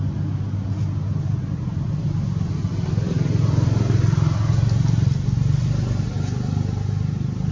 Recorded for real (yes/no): yes